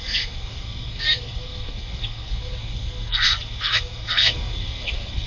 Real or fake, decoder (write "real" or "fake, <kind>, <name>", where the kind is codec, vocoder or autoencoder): fake, codec, SNAC